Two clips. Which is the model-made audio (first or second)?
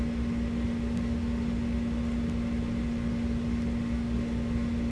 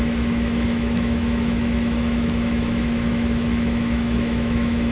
second